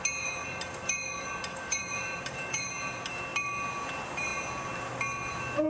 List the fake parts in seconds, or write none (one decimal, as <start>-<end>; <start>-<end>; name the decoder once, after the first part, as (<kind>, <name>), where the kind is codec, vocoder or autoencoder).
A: 0.4-2.7 (vocoder, BigVGAN v2)